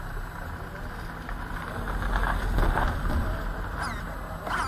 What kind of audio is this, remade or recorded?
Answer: recorded